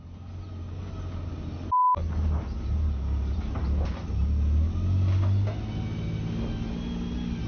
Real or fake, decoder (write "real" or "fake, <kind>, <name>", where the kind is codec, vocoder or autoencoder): real